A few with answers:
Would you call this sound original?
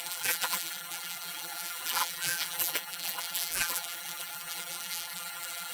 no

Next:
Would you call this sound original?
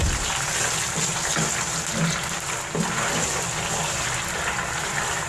yes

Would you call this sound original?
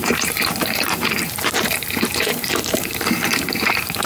no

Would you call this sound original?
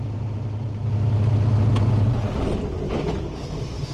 yes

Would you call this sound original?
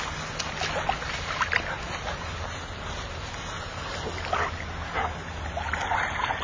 yes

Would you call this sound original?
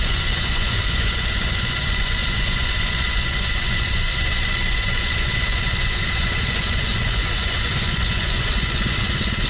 no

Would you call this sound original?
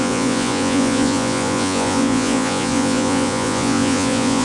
no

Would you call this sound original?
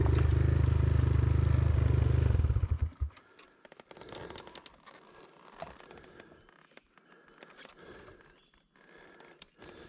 yes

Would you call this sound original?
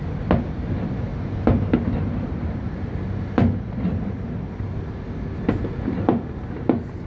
yes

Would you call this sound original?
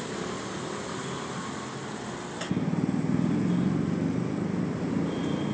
yes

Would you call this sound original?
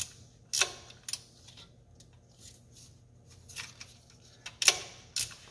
yes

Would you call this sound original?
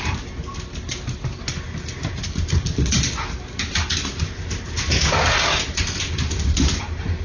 yes